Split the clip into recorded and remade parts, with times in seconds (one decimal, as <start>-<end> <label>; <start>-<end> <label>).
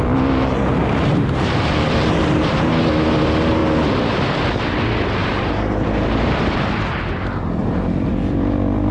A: 0.0-0.8 recorded; 0.8-2.7 remade; 2.7-5.2 recorded; 5.2-6.7 remade; 6.7-7.6 recorded; 7.6-8.1 remade; 8.1-8.9 recorded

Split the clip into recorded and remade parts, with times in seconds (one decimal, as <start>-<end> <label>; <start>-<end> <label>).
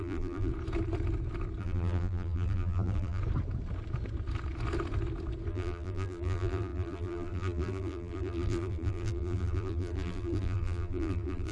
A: 0.0-0.5 remade; 0.5-1.6 recorded; 1.6-3.2 remade; 3.2-5.5 recorded; 5.5-11.5 remade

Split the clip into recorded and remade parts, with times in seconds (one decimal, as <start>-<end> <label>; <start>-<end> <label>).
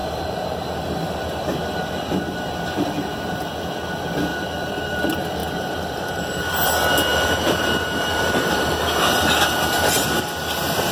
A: 0.0-2.1 remade; 2.1-4.3 recorded; 4.3-5.0 remade; 5.0-5.4 recorded; 5.4-6.4 remade; 6.4-7.1 recorded; 7.1-8.7 remade; 8.7-10.9 recorded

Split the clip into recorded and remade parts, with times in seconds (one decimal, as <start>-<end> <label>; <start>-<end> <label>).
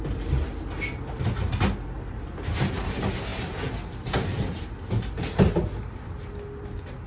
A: 0.0-7.1 recorded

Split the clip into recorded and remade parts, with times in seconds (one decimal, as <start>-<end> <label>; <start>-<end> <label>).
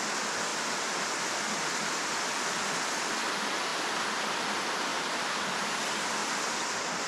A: 0.0-4.9 recorded; 4.9-5.7 remade; 5.7-7.1 recorded